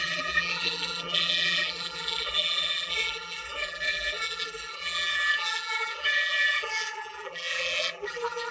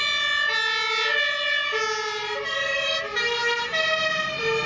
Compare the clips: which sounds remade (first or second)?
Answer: first